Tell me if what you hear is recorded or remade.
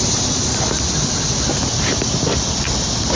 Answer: recorded